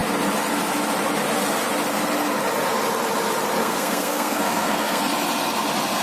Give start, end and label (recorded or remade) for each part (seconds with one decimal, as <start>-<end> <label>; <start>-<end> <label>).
0.0-3.6 recorded; 3.6-5.0 remade; 5.0-6.0 recorded